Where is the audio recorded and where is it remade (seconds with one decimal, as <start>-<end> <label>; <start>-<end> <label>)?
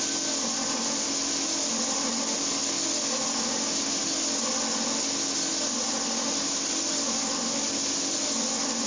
0.0-8.9 recorded